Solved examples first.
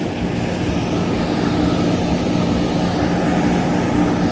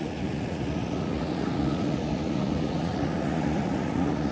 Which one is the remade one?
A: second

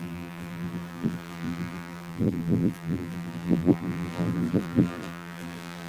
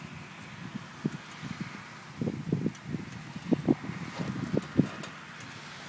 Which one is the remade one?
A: first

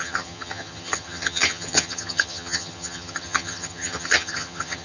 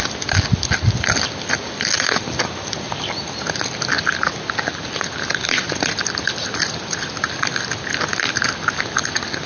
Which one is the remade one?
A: first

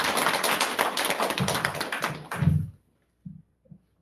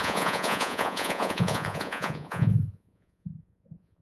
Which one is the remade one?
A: second